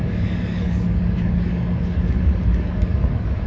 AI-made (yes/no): yes